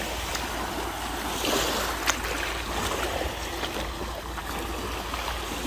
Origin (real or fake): real